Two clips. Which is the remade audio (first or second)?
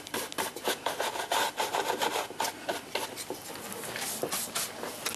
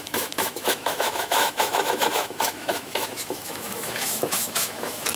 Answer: second